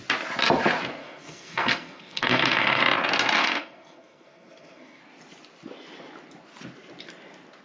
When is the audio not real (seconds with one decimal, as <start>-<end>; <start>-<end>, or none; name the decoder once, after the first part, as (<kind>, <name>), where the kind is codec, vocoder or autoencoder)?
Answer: 1.0-2.8 (codec, SNAC); 3.4-5.0